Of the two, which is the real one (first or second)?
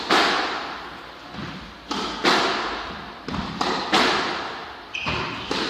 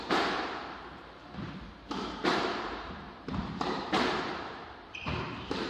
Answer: first